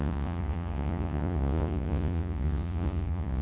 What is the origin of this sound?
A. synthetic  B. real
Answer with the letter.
A